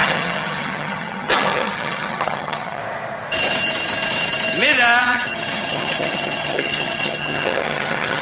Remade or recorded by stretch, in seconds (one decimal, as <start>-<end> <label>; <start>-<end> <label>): 0.0-2.8 remade; 2.8-5.0 recorded; 5.0-8.2 remade